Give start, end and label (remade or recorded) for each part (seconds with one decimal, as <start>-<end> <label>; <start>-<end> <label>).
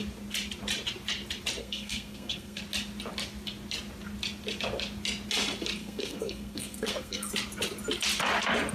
0.0-1.6 recorded; 1.6-2.6 remade; 2.6-5.8 recorded; 5.8-7.3 remade; 7.3-8.7 recorded